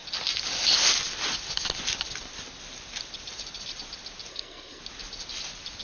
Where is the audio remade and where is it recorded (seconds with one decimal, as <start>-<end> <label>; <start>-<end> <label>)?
0.0-4.3 recorded; 4.3-4.8 remade; 4.8-5.8 recorded

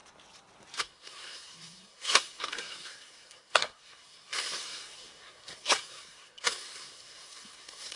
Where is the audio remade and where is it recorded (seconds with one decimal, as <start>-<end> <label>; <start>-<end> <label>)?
0.0-0.8 recorded; 0.8-8.0 remade

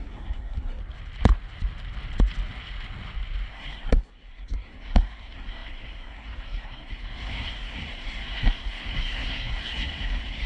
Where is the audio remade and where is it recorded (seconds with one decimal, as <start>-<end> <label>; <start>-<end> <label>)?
0.0-0.8 remade; 0.8-3.5 recorded; 3.5-10.5 remade

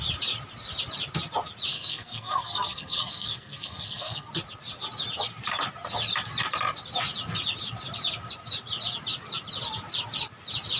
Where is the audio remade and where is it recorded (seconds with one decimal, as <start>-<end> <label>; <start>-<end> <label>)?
0.0-1.7 recorded; 1.7-4.3 remade; 4.3-10.8 recorded

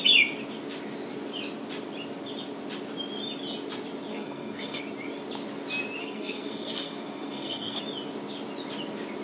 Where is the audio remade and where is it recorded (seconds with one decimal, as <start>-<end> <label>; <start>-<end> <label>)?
0.0-4.1 recorded; 4.1-4.8 remade; 4.8-6.0 recorded; 6.0-7.8 remade; 7.8-9.2 recorded

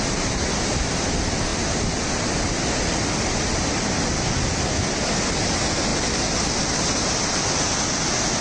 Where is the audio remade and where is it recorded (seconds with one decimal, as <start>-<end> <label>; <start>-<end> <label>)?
0.0-8.4 recorded